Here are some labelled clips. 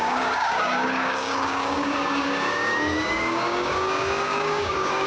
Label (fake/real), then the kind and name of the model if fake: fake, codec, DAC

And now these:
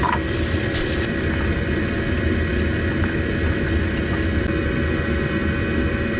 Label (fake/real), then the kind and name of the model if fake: real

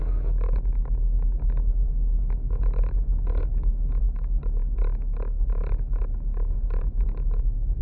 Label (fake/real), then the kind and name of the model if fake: fake, codec, DAC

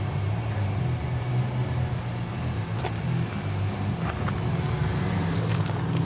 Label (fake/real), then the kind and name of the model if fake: real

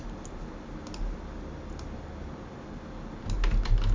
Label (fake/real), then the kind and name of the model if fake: real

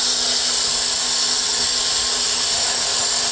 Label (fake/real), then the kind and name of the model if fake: real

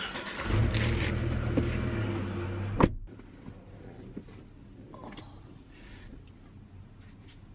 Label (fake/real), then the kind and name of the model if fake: real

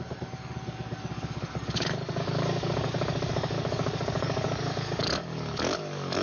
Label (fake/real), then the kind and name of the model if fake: fake, codec, DAC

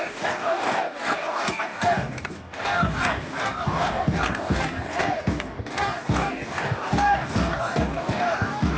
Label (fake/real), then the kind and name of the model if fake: fake, codec, DAC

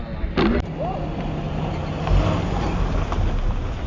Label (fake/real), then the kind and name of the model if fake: real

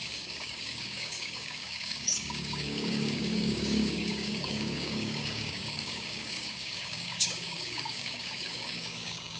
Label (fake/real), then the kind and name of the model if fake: fake, codec, DAC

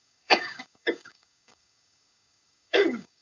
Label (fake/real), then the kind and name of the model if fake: fake, codec, DAC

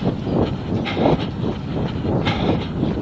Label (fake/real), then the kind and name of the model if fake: real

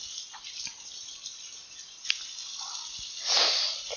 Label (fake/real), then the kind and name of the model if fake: real